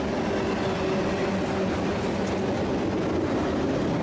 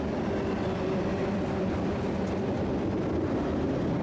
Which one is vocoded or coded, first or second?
second